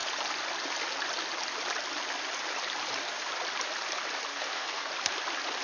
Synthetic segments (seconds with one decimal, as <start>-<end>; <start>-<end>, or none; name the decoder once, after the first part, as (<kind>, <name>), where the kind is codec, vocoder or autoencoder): 4.3-4.9 (codec, SNAC)

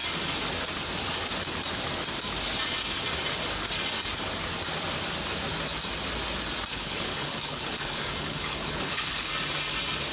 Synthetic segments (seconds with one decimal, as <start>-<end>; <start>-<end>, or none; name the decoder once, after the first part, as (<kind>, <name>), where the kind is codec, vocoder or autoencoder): 6.7-9.3 (codec, HILCodec)

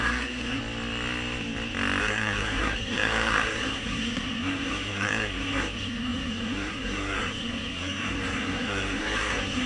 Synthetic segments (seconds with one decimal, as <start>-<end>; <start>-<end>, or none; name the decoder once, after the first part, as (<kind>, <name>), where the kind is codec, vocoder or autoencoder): 0.0-0.6 (codec, SNAC); 2.0-9.7

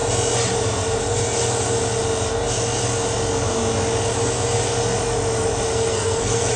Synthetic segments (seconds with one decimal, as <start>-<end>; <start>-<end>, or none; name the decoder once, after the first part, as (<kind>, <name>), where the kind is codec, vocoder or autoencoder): 5.7-6.6 (codec, SNAC)

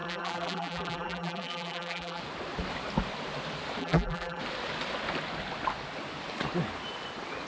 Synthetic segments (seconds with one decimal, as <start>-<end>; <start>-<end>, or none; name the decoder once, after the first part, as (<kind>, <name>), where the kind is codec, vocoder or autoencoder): 0.0-2.2 (vocoder, BigVGAN v2); 3.8-4.4

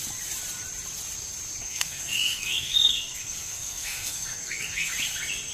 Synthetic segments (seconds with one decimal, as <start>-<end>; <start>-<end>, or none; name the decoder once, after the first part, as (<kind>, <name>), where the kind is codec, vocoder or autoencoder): 1.6-4.9 (codec, SNAC)

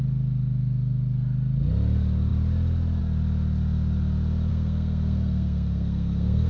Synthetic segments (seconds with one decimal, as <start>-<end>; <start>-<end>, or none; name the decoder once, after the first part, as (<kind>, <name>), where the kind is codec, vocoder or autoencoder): 4.5-6.5 (codec, SNAC)